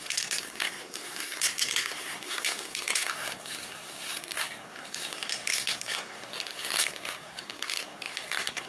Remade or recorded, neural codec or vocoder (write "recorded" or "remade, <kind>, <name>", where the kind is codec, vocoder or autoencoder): remade, codec, SNAC